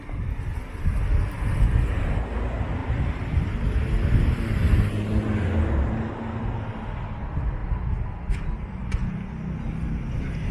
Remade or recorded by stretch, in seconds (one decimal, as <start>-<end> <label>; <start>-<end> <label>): 0.0-10.5 recorded